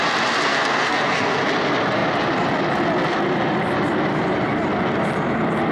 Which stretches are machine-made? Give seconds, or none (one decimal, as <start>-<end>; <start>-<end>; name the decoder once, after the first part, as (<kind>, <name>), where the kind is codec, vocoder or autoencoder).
0.5-1.4 (codec, SNAC)